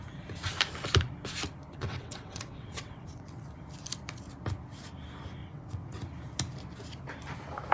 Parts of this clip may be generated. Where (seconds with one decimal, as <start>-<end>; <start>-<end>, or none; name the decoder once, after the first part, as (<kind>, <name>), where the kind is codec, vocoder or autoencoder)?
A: 1.7-3.4 (vocoder, WaveNeXt); 5.4-6.0